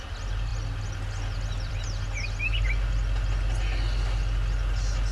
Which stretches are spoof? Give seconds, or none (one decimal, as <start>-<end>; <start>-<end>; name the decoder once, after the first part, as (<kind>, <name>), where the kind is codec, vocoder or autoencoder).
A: none